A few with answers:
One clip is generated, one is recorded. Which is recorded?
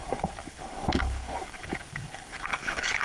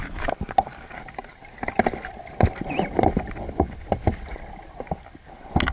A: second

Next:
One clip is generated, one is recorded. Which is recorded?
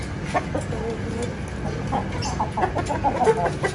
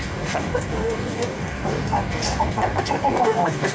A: first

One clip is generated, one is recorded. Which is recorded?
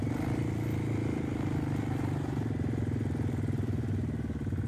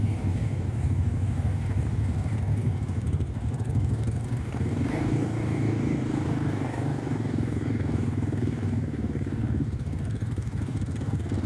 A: first